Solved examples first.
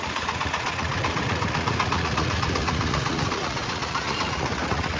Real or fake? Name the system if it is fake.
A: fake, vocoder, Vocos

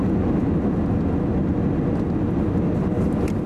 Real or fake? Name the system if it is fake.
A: real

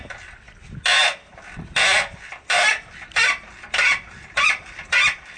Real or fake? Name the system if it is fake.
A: real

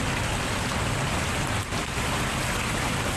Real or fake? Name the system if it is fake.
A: real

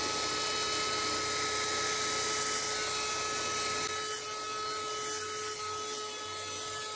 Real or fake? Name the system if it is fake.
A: real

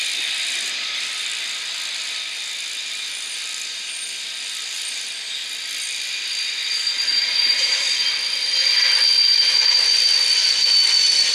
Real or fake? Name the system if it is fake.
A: fake, vocoder, BigVGAN v2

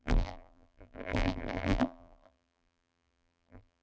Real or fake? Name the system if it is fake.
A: fake, vocoder, BigVGAN v2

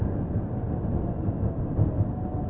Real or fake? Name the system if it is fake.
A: real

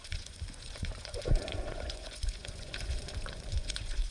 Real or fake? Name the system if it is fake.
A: fake, vocoder, Vocos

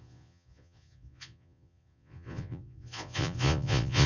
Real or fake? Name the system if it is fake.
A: fake, vocoder, Vocos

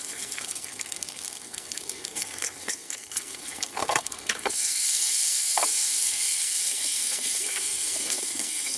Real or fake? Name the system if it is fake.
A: fake, codec, SNAC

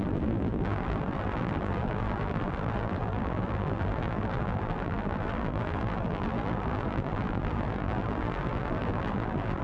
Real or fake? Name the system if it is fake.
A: fake, vocoder, BigVGAN v2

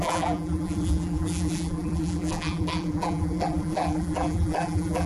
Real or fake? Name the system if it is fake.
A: fake, vocoder, BigVGAN v2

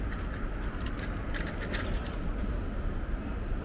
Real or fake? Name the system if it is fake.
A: real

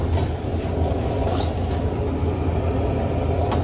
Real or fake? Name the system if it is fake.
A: real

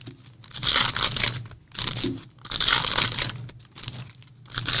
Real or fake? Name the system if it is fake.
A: real